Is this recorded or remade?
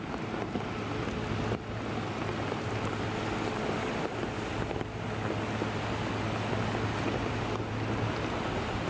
recorded